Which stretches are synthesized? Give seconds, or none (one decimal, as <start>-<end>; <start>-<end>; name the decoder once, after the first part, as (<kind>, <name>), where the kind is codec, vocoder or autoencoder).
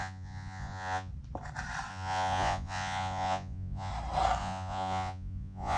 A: 0.0-1.1 (vocoder, Vocos); 1.9-3.9; 4.4-5.8